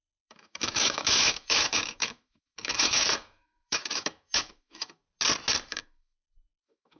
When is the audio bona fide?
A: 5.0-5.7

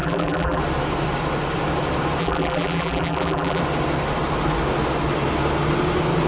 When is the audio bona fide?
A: 0.6-2.2; 3.6-6.3

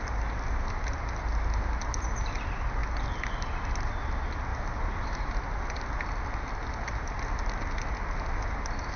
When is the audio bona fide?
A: 0.0-4.5; 5.3-9.0

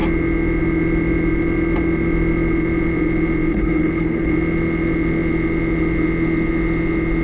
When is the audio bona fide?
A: 0.0-3.5; 4.3-7.2

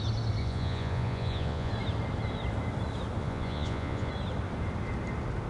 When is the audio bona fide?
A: 0.0-0.4; 1.7-3.2; 4.1-5.5

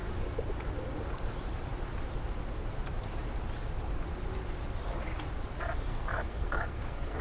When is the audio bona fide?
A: 0.0-5.9

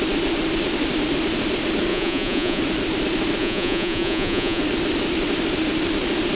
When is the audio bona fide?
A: 0.0-1.9; 2.6-3.4; 4.6-6.4

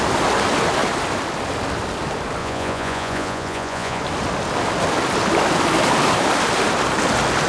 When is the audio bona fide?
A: 0.0-2.4; 4.0-7.5